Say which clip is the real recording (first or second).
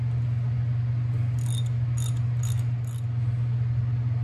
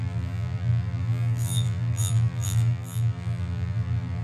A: first